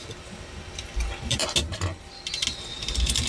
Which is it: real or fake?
real